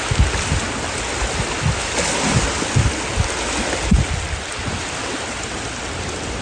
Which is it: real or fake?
real